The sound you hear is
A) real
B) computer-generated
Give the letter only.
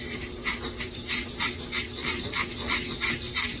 A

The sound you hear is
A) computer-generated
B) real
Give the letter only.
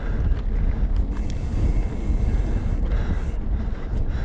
B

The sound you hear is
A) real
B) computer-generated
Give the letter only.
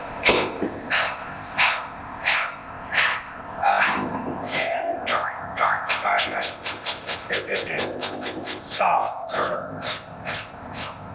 B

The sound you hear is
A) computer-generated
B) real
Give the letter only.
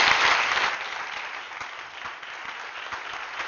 B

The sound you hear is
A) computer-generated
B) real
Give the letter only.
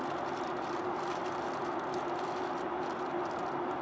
B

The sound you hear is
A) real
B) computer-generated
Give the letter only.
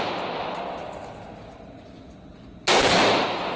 A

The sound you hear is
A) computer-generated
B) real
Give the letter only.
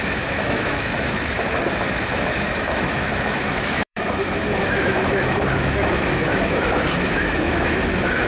A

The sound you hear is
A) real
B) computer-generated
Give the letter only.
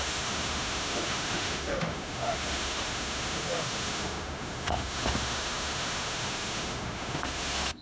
B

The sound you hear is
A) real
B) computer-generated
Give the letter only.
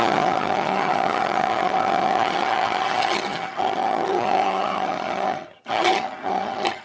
B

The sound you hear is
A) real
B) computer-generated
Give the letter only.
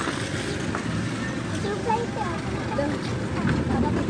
A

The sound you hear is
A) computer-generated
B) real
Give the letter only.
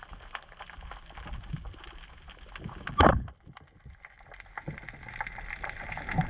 B